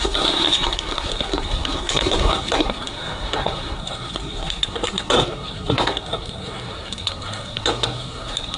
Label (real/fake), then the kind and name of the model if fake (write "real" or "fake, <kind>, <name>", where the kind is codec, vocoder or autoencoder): fake, codec, SNAC